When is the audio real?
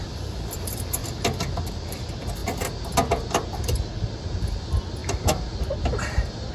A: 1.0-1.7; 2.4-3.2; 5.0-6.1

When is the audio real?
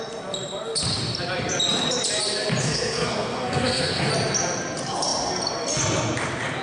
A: 0.0-2.6; 4.1-6.6